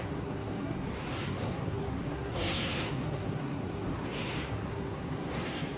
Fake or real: fake